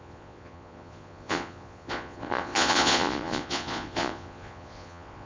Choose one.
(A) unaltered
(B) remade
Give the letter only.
B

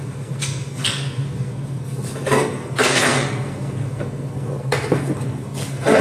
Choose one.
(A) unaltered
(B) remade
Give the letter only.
B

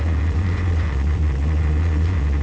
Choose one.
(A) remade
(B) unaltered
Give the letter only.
A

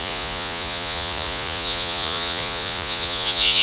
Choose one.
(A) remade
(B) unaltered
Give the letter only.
A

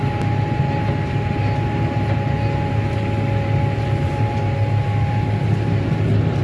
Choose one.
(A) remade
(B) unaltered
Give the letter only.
B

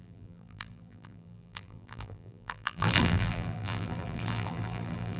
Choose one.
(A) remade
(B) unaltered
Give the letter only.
A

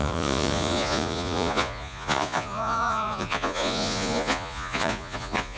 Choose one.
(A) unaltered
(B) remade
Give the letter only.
B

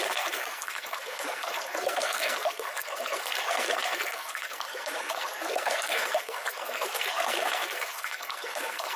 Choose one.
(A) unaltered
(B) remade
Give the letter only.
B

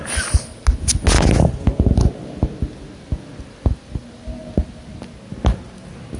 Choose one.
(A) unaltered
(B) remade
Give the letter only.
A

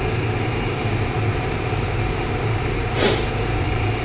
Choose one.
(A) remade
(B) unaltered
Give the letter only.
A